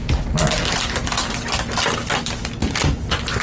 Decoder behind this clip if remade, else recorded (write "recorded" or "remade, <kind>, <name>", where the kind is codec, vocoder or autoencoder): recorded